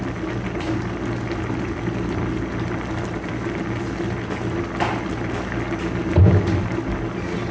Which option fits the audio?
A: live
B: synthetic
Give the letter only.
A